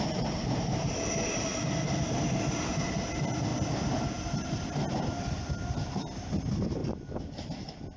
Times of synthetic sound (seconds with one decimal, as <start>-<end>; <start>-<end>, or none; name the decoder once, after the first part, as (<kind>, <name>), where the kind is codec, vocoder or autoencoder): 1.5-2.8 (vocoder, BigVGAN v2)